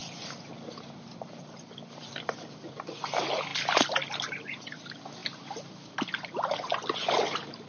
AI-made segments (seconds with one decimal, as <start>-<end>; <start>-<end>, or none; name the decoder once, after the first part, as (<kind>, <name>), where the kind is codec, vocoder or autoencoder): 1.1-3.5 (vocoder, BigVGAN v2); 4.3-5.2; 5.7-7.7